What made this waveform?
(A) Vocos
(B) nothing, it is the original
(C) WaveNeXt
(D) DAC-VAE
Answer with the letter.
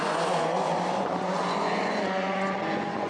A